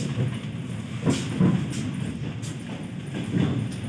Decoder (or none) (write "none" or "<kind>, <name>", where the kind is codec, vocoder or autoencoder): none